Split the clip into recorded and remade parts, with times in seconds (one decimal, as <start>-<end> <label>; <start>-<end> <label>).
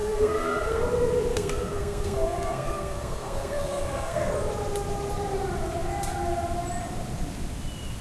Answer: 0.0-0.8 remade; 0.8-1.3 recorded; 1.3-4.3 remade; 4.3-8.0 recorded